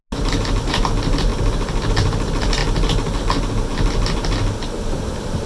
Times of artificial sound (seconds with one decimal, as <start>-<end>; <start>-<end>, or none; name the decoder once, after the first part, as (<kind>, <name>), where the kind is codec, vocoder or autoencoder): 0.6-2.6 (vocoder, BigVGAN v2); 5.1-5.5